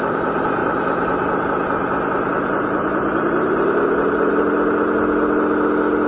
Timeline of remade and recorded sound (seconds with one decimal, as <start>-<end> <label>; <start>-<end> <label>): 0.0-6.1 recorded